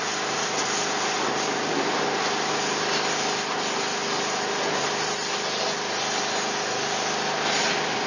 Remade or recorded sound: recorded